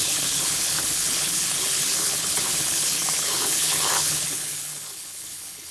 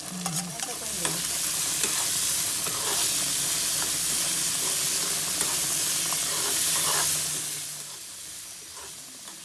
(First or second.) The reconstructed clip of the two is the first